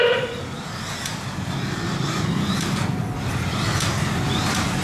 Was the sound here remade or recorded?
recorded